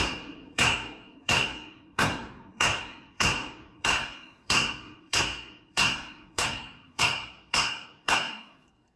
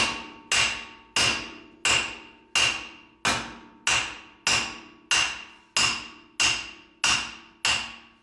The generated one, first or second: first